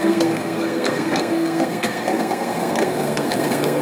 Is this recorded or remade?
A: remade